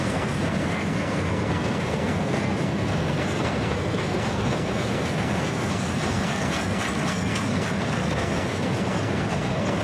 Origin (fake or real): fake